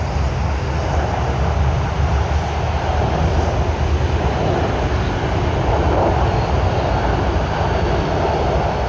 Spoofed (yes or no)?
no